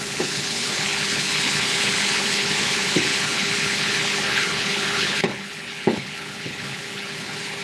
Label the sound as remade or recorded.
remade